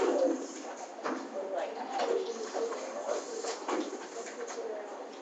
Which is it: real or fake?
real